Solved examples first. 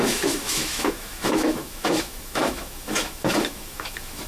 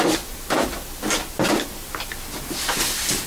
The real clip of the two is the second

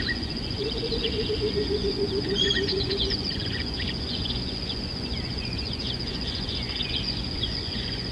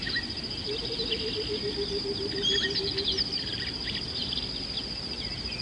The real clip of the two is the second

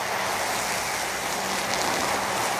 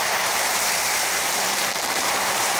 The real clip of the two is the first